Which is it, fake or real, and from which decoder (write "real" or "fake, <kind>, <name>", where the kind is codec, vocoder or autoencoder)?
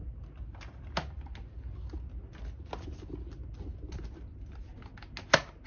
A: real